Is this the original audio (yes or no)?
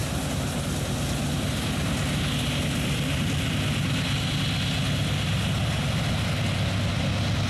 yes